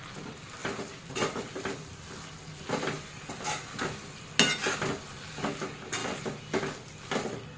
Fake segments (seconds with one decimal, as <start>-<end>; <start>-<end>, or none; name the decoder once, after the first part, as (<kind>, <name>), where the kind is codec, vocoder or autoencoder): none